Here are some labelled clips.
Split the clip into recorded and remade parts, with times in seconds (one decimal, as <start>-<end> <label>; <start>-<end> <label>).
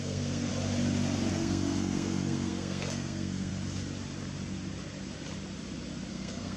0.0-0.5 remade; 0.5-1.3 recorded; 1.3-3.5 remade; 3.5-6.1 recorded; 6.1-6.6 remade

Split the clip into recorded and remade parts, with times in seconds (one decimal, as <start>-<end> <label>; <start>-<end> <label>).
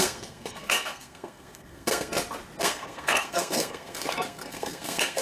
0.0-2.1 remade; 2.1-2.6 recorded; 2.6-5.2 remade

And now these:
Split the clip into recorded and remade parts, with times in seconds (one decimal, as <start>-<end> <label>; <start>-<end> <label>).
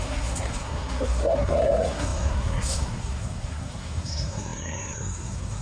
0.0-5.6 remade